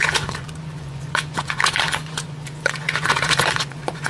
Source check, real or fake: fake